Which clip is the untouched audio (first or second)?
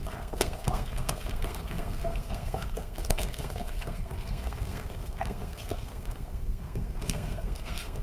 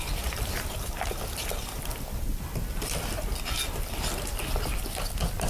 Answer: second